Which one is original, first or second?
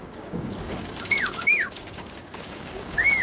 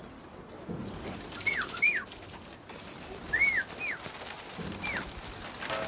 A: second